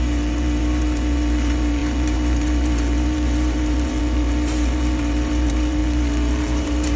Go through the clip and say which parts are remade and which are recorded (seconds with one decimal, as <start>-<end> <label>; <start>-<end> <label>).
0.0-7.0 remade